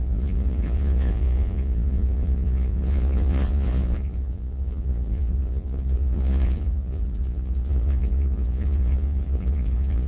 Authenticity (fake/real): fake